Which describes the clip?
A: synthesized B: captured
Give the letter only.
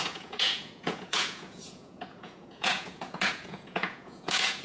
A